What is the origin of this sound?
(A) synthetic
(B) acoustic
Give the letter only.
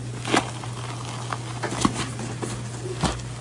B